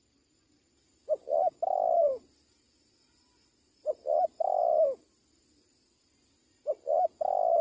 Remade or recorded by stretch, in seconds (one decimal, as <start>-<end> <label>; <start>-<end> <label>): 0.0-7.6 recorded